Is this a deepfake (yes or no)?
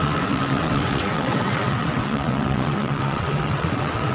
yes